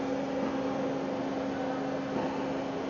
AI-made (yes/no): no